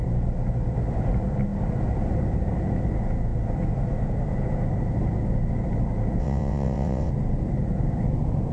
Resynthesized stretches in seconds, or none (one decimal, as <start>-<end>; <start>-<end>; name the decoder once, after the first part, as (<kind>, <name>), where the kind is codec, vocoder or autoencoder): 6.2-7.1 (vocoder, WaveNeXt)